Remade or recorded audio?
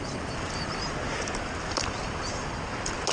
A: recorded